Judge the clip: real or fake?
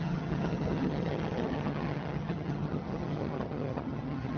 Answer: fake